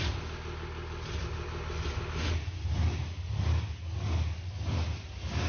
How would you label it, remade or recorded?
recorded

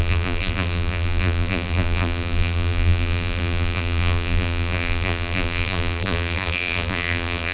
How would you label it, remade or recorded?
remade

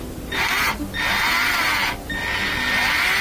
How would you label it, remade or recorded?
recorded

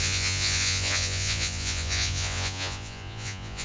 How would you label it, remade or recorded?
remade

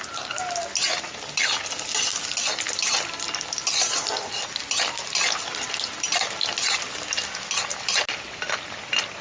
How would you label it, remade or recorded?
recorded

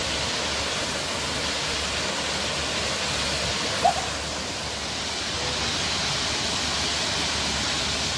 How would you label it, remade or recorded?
recorded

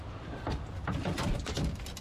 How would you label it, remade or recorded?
recorded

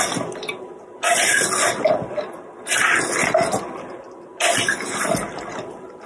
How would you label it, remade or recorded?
recorded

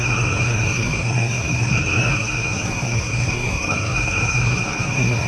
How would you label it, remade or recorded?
remade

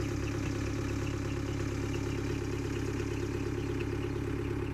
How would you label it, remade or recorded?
recorded